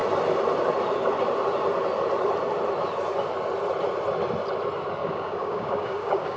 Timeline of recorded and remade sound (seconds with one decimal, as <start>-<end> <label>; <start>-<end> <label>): 0.0-5.0 recorded; 5.0-6.4 remade